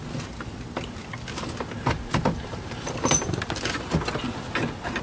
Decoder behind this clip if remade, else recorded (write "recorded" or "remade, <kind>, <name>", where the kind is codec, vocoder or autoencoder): recorded